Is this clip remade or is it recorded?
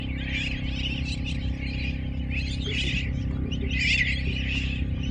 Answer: recorded